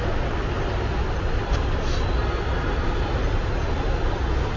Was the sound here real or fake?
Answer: real